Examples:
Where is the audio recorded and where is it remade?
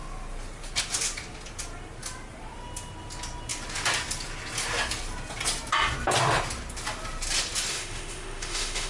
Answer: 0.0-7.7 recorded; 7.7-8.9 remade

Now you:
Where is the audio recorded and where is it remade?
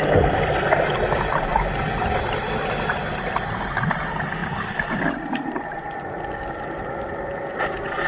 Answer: 0.0-8.1 recorded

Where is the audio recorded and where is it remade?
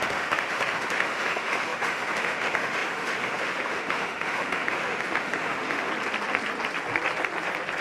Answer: 0.0-5.9 remade; 5.9-7.8 recorded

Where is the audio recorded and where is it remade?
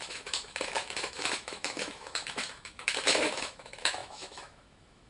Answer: 0.0-5.1 remade